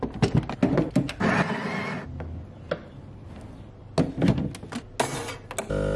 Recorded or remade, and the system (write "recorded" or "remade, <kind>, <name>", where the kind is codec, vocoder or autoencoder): recorded